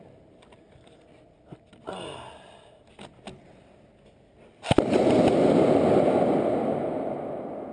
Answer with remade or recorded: recorded